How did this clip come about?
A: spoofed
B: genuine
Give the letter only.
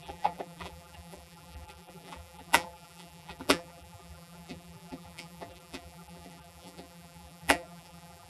A